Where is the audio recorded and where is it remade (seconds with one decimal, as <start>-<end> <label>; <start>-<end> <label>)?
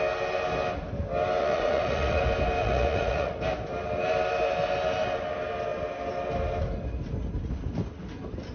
0.0-1.4 recorded; 1.4-2.2 remade; 2.2-2.6 recorded; 2.6-3.4 remade; 3.4-8.5 recorded